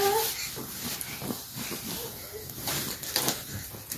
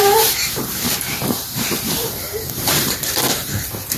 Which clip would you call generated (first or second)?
second